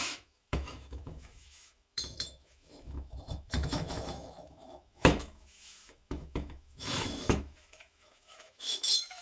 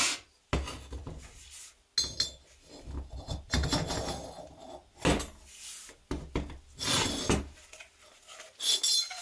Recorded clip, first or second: second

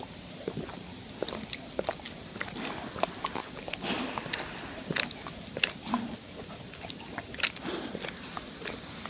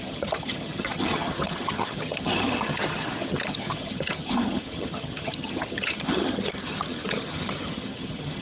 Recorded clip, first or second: first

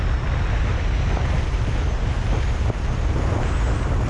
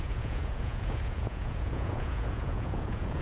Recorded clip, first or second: first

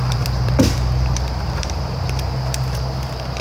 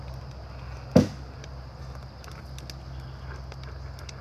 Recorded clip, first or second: second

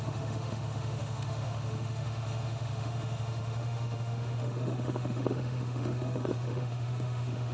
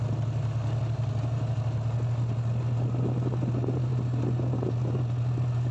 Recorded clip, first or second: second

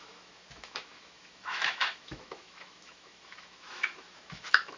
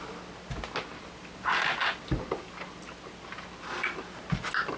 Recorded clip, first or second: second